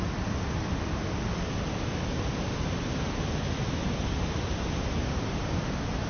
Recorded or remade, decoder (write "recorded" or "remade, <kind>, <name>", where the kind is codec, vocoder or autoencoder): recorded